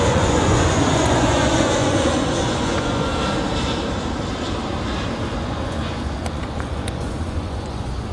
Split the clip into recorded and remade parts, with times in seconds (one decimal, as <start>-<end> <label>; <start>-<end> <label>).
0.0-3.1 remade; 3.1-5.3 recorded; 5.3-8.1 remade